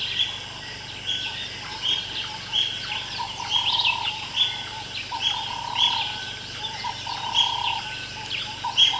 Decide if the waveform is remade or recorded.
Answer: recorded